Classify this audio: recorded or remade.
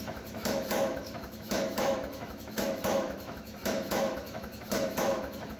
remade